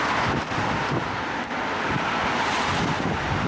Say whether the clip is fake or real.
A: fake